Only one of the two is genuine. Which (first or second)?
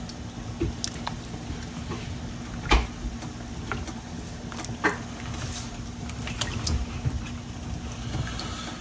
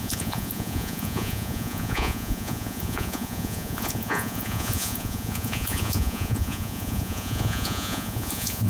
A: first